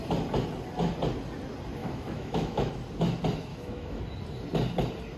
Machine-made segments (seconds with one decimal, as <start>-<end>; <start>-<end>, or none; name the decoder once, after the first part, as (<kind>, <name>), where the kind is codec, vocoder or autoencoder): 1.8-2.7 (autoencoder, DAC-VAE); 3.5-4.0